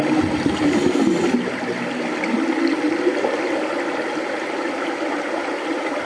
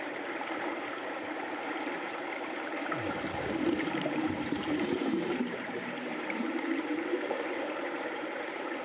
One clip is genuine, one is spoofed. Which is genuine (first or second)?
first